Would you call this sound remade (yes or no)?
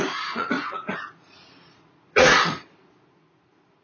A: yes